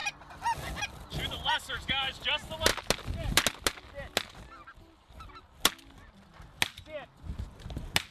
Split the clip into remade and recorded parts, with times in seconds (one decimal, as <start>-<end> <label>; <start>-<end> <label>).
0.0-8.1 recorded